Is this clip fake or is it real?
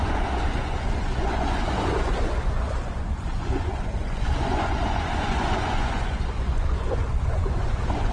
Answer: fake